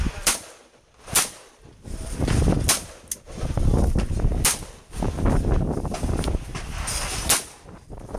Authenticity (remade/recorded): recorded